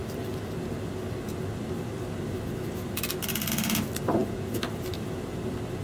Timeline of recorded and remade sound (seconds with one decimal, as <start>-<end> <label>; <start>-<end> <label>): 0.0-5.8 recorded